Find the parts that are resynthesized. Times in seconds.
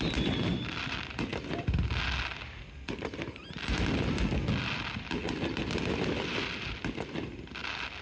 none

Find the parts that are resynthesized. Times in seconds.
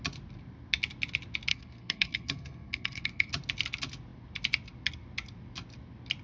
1.5-3.3 (codec, SNAC)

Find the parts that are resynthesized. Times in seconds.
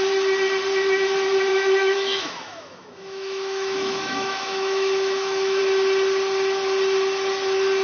1.5-5.6 (autoencoder, DAC-VAE)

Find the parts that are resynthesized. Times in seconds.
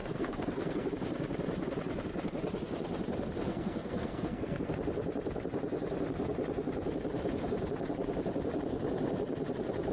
0.0-0.9 (codec, SNAC); 3.4-4.7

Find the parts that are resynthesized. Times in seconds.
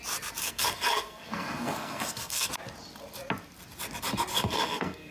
0.4-2.5 (codec, SNAC); 4.3-5.1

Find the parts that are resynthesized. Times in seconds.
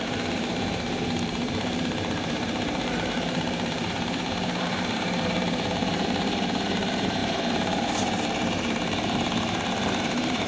0.0-10.5 (vocoder, BigVGAN v2)